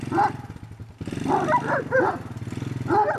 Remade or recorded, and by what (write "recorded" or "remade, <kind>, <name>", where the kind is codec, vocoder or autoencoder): recorded